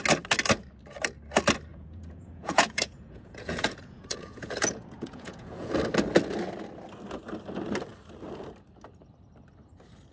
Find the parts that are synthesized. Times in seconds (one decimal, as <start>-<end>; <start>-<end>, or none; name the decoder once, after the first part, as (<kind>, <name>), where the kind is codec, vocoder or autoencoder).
1.7-5.7 (vocoder, Vocos)

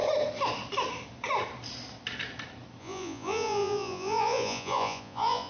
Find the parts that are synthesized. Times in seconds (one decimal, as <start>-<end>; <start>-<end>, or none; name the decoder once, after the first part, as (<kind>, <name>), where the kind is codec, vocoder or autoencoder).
2.8-5.5 (vocoder, Vocos)

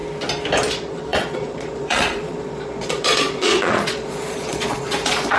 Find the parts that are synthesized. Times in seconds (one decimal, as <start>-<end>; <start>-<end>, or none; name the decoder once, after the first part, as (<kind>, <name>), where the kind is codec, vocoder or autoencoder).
0.7-5.4 (vocoder, Vocos)

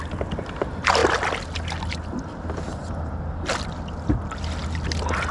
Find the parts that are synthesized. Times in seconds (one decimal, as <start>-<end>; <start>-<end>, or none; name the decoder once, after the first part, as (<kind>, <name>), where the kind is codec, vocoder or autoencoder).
none